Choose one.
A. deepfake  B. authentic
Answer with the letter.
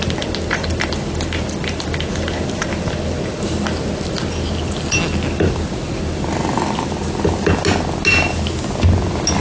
B